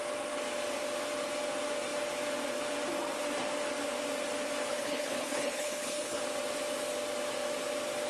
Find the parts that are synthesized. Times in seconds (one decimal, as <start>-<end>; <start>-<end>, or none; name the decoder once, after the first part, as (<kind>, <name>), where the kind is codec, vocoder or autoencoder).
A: 4.7-6.2 (codec, HILCodec)